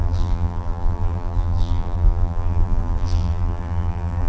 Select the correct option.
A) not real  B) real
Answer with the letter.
A